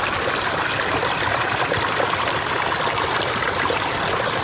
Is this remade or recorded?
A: remade